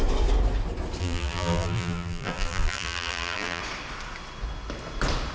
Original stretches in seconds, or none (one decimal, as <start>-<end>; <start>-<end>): 0.0-1.0; 3.6-5.3